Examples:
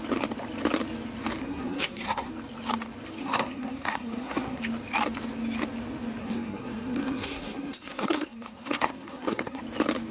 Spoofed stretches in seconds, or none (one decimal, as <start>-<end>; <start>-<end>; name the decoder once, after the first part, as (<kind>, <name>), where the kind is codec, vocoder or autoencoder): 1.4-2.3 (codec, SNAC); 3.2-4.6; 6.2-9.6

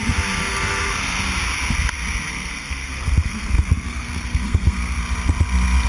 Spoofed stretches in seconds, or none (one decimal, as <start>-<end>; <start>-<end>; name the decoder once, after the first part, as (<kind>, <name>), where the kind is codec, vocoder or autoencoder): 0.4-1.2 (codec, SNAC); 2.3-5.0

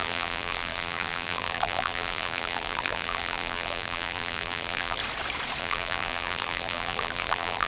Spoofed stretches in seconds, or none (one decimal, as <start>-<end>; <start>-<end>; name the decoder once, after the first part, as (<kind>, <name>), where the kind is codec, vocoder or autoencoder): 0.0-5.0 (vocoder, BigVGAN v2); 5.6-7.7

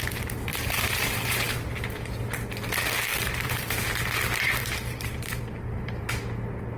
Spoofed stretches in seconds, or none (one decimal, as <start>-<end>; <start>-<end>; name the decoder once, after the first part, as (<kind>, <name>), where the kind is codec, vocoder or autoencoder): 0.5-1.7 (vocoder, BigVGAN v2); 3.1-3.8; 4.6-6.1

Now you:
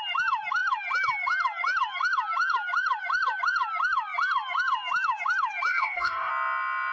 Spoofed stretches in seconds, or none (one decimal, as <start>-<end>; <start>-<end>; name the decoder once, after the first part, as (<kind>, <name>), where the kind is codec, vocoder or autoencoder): 5.7-6.3 (codec, DAC)

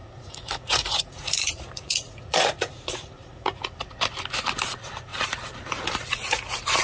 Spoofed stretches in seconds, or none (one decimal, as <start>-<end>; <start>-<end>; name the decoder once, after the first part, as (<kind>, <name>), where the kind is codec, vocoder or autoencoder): 0.0-3.6 (vocoder, Vocos)

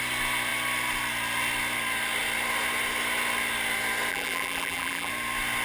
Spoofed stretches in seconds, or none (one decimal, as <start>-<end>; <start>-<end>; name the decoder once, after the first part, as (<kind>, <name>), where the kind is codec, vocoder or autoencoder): 4.1-5.1 (vocoder, BigVGAN v2)